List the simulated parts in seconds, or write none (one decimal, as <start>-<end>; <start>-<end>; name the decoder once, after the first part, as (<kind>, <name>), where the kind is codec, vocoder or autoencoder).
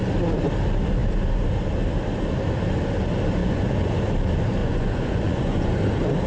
3.4-4.0 (vocoder, Vocos); 4.6-5.8